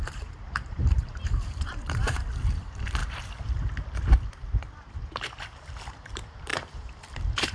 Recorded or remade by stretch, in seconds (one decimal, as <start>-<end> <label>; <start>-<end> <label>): 0.0-3.0 remade; 3.0-4.3 recorded; 4.3-7.5 remade